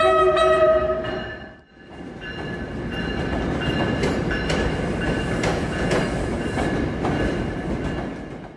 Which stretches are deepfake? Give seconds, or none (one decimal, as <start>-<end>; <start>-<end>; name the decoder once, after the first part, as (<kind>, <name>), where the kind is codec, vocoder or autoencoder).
5.5-6.0 (vocoder, Vocos)